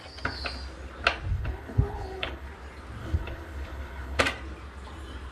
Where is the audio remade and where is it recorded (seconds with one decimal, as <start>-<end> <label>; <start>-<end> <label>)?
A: 0.0-1.3 recorded; 1.3-2.5 remade; 2.5-3.0 recorded; 3.0-4.2 remade; 4.2-5.3 recorded